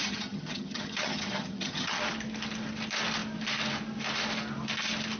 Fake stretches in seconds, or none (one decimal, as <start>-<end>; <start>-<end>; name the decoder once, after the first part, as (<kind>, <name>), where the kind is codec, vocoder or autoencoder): 0.0-2.0 (vocoder, HiFi-GAN)